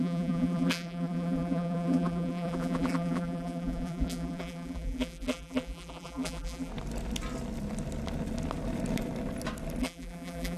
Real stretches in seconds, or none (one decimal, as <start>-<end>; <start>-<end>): 6.7-9.8